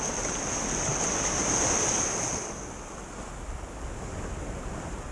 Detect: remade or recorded recorded